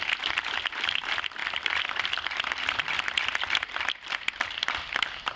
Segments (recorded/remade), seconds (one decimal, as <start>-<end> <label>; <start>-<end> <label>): 0.0-5.4 recorded